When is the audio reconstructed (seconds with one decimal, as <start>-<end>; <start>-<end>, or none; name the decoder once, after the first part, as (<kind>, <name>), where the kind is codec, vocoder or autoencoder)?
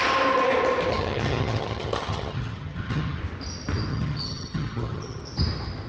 0.9-3.2 (vocoder, HiFi-GAN); 3.9-5.2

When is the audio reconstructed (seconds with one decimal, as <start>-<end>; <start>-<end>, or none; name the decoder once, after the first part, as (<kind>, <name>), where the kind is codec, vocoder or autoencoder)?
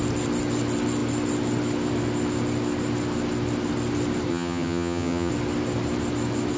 4.3-5.3 (vocoder, HiFi-GAN)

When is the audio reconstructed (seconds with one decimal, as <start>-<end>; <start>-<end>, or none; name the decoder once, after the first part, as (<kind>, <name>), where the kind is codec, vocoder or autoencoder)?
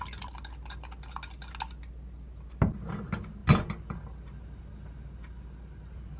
none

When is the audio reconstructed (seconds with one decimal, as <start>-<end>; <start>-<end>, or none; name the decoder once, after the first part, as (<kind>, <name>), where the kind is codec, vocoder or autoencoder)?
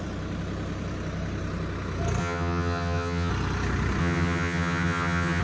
2.2-3.3 (vocoder, HiFi-GAN); 4.0-5.4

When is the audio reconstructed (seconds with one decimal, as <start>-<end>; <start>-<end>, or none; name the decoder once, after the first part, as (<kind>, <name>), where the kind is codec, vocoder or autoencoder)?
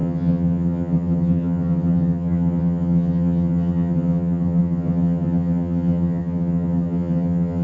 0.0-7.6 (vocoder, HiFi-GAN)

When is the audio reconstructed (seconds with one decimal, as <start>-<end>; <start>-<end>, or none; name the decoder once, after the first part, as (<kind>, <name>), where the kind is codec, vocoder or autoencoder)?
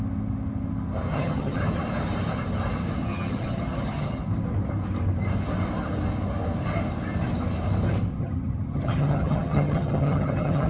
1.1-1.6 (vocoder, HiFi-GAN); 3.0-4.2; 8.1-10.7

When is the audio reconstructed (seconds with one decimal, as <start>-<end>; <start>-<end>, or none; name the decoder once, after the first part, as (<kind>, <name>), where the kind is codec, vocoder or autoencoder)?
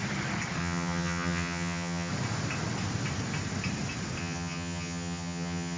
0.6-2.1 (vocoder, HiFi-GAN); 4.2-5.8